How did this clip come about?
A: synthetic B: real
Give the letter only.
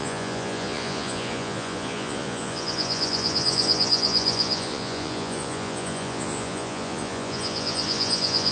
A